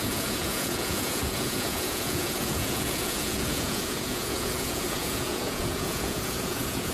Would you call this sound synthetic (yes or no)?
yes